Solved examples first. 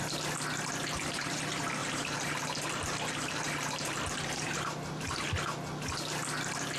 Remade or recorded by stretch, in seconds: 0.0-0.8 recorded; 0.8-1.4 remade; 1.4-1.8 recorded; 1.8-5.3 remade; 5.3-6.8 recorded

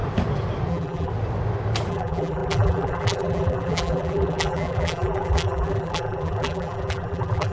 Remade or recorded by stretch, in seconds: 0.0-0.7 recorded; 0.7-1.1 remade; 1.1-1.9 recorded; 1.9-7.5 remade

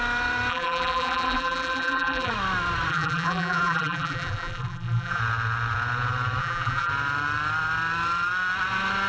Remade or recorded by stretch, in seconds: 0.0-0.5 recorded; 0.5-2.3 remade; 2.3-2.9 recorded; 2.9-5.2 remade; 5.2-6.4 recorded; 6.4-6.9 remade; 6.9-9.1 recorded

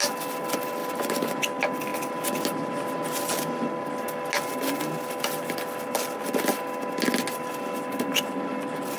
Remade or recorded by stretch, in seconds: 0.0-0.8 recorded; 0.8-1.4 remade; 1.4-9.0 recorded

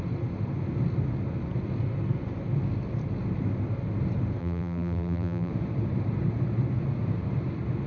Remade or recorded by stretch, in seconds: 0.0-4.4 recorded; 4.4-5.5 remade; 5.5-7.9 recorded

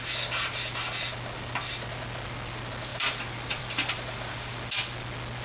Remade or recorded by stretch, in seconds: 0.0-1.1 recorded; 1.1-1.8 remade; 1.8-2.9 recorded; 2.9-4.7 remade; 4.7-5.4 recorded

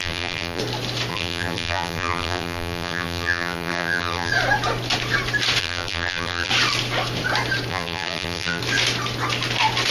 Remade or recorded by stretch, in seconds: 0.0-0.6 remade; 0.6-1.1 recorded; 1.1-4.3 remade; 4.3-5.6 recorded; 5.6-6.5 remade; 6.5-7.7 recorded; 7.7-8.6 remade; 8.6-9.9 recorded

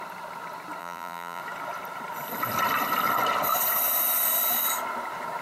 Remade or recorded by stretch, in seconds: 0.0-0.8 recorded; 0.8-1.4 remade; 1.4-5.4 recorded